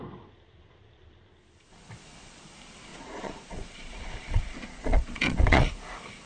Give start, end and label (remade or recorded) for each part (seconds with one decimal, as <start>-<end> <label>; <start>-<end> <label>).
0.0-2.9 recorded; 2.9-5.7 remade; 5.7-6.3 recorded